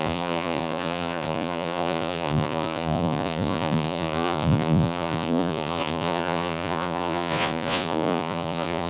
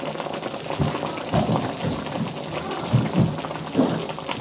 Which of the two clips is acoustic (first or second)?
second